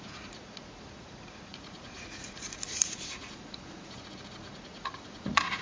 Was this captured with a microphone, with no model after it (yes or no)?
no